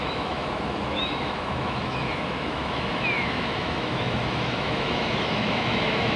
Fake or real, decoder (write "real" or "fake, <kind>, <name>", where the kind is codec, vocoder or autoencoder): fake, autoencoder, DAC-VAE